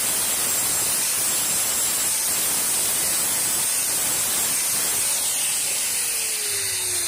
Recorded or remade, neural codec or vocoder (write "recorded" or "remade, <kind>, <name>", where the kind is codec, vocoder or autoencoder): recorded